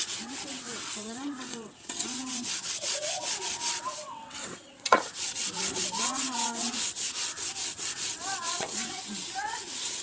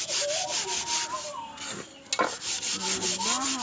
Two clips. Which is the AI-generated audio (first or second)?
first